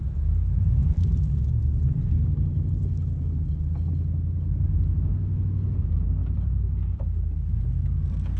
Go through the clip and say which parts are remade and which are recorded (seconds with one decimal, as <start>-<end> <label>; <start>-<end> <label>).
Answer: 0.0-0.8 recorded; 0.8-2.2 remade; 2.2-6.2 recorded; 6.2-7.0 remade; 7.0-8.4 recorded